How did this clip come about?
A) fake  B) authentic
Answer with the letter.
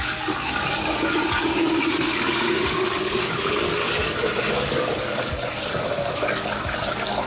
A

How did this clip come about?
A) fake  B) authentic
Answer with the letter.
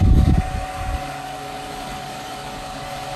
A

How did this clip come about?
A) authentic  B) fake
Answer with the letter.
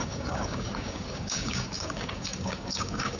B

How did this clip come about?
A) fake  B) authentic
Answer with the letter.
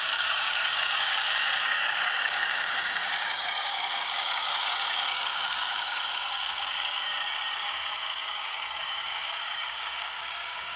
A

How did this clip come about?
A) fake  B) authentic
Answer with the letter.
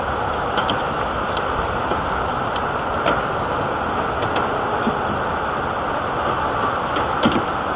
B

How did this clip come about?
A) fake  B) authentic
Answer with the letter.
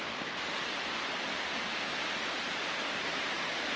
B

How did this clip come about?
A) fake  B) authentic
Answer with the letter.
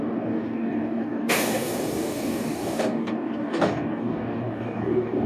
A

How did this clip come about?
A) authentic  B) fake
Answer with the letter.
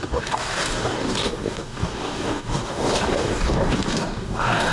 B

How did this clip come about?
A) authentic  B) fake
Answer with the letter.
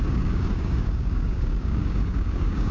B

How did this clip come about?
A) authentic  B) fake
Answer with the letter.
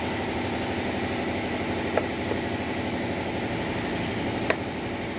A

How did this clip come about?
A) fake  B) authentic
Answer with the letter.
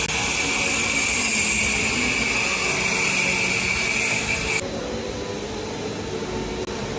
B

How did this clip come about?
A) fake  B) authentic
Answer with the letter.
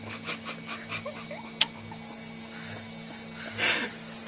B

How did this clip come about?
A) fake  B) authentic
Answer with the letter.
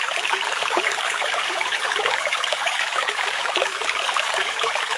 A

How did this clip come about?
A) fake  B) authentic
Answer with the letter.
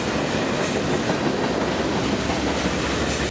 B